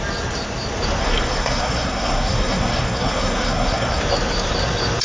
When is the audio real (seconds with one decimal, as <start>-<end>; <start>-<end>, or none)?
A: 0.0-1.0; 4.0-5.0